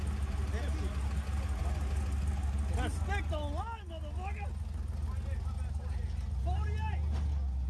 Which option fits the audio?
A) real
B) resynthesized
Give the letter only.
A